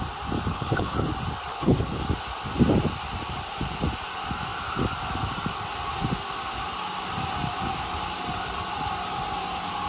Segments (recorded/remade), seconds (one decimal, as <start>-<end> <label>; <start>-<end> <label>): 0.0-0.5 recorded; 0.5-1.1 remade; 1.1-1.5 recorded; 1.5-2.0 remade; 2.0-9.9 recorded

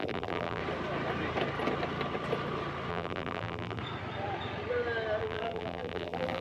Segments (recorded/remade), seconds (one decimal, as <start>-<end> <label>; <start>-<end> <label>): 0.0-0.6 remade; 0.6-2.9 recorded; 2.9-3.8 remade; 3.8-5.2 recorded; 5.2-6.4 remade

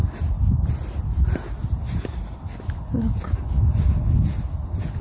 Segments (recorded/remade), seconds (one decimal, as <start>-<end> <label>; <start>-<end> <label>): 0.0-5.0 recorded

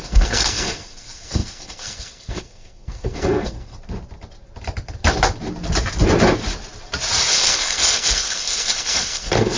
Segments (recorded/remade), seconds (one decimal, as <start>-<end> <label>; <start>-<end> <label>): 0.0-3.7 remade; 3.7-7.3 recorded; 7.3-9.6 remade

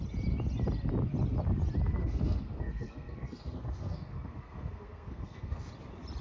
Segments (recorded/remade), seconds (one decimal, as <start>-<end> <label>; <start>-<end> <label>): 0.0-2.0 recorded; 2.0-5.7 remade; 5.7-6.2 recorded

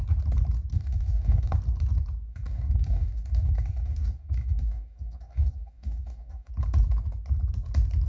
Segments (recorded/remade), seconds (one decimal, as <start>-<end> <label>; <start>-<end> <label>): 0.0-0.7 recorded; 0.7-1.5 remade; 1.5-2.3 recorded; 2.3-6.5 remade; 6.5-8.1 recorded